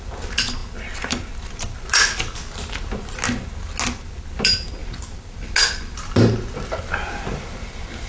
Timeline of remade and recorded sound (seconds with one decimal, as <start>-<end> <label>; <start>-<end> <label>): 0.0-8.1 recorded